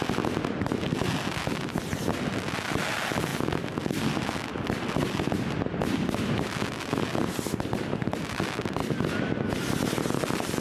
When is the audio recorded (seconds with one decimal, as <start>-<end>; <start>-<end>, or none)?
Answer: 0.0-10.6